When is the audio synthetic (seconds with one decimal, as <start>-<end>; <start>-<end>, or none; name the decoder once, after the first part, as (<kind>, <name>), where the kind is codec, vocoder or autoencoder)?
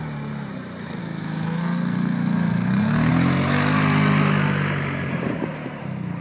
1.0-3.1 (codec, SNAC)